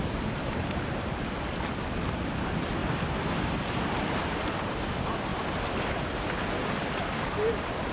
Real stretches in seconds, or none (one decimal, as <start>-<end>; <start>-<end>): 0.0-7.9